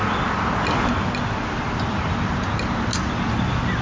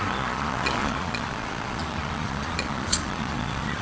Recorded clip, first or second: first